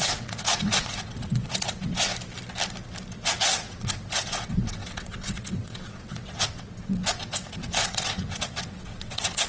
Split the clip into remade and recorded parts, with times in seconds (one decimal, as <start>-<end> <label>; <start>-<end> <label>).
0.0-2.1 remade; 2.1-3.1 recorded; 3.1-9.5 remade